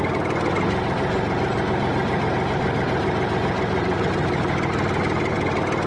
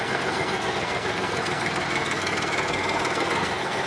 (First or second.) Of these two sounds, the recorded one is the first